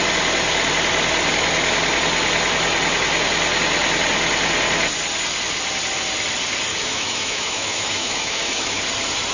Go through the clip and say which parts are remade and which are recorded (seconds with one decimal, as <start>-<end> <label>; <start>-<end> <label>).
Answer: 0.0-6.7 recorded; 6.7-8.8 remade; 8.8-9.3 recorded